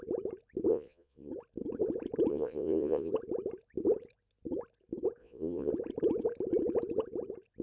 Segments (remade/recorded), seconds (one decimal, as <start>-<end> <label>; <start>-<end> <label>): 0.0-0.7 recorded; 0.7-1.3 remade; 1.3-2.3 recorded; 2.3-3.1 remade; 3.1-5.2 recorded; 5.2-5.7 remade; 5.7-7.6 recorded